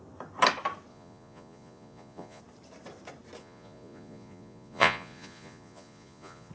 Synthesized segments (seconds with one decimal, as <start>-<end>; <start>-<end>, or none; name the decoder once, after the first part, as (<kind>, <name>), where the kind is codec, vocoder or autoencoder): 0.9-2.4 (vocoder, Vocos); 3.4-6.5